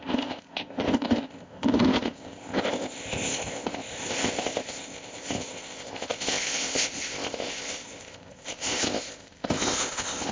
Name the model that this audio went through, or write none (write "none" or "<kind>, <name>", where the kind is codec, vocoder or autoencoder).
codec, ZipCodec